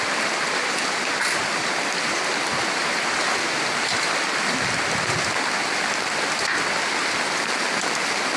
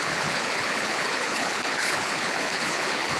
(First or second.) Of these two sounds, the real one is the first